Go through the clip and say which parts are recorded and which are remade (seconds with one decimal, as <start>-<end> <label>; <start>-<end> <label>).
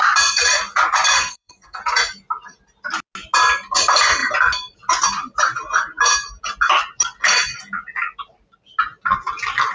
0.0-1.2 recorded; 1.2-1.8 remade; 1.8-9.7 recorded